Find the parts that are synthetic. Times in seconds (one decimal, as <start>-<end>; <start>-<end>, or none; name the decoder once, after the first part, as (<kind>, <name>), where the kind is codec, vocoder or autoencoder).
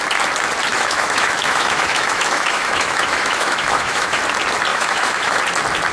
0.7-4.2 (autoencoder, DAC-VAE); 4.7-5.4